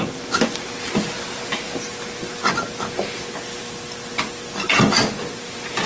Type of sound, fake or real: real